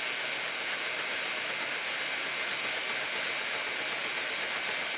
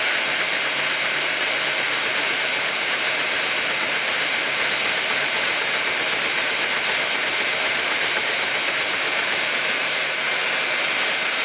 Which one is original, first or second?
first